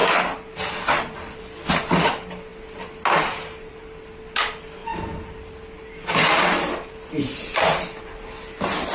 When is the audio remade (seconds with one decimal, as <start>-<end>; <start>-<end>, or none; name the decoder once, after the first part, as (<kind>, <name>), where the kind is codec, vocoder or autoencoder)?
none